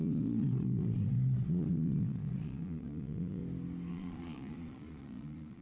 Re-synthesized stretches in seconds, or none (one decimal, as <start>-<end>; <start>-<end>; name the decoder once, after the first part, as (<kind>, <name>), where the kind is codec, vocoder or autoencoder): 0.0-3.4 (vocoder, Vocos); 3.9-5.6